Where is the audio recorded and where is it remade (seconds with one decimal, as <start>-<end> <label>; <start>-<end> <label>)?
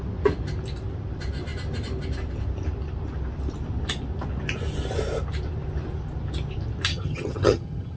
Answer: 0.0-6.9 recorded; 6.9-8.0 remade